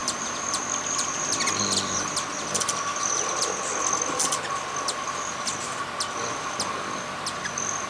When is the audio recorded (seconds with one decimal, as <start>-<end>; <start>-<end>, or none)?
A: 0.6-7.9